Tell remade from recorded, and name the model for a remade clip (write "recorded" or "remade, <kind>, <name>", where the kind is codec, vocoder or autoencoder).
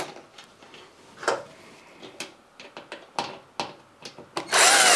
recorded